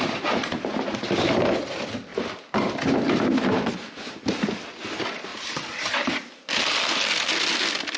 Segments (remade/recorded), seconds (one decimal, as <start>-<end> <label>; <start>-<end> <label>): 0.0-8.0 recorded